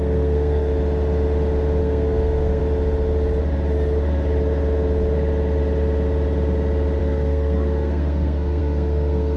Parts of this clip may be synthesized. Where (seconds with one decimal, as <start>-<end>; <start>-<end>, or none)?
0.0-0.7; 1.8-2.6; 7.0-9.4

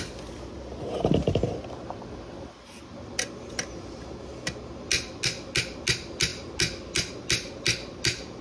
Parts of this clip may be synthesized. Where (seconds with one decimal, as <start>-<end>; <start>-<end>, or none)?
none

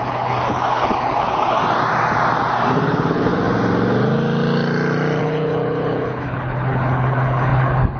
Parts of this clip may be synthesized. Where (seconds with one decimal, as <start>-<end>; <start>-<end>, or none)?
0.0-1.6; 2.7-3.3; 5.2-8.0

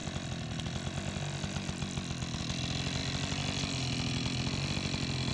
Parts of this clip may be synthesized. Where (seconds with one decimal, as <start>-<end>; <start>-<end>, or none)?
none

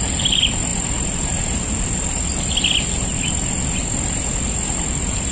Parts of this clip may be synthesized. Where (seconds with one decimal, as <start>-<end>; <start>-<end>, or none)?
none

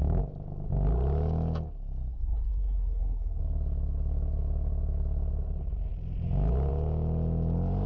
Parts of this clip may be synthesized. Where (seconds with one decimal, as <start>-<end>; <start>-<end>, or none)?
2.1-3.4

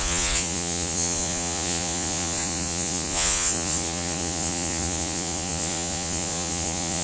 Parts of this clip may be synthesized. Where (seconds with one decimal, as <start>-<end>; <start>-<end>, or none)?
0.0-7.0

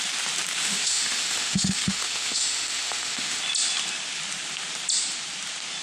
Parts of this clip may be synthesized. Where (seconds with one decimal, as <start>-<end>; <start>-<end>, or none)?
0.6-3.4